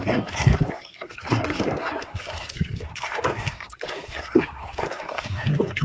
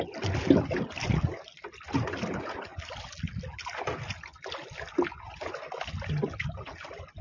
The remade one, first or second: first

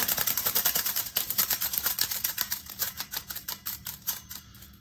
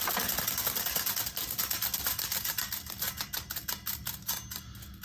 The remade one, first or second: first